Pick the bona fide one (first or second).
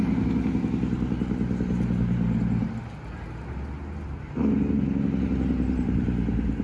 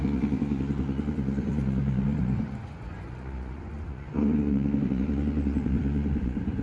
first